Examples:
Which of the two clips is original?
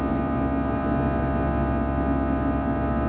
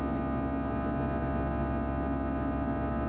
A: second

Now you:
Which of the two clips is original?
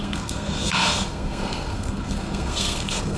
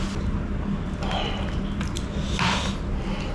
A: second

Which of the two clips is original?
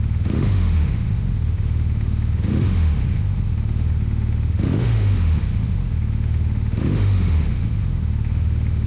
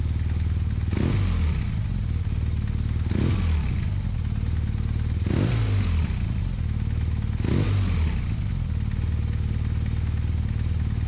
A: second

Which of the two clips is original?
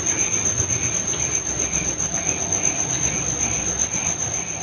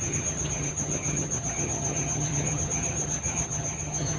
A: first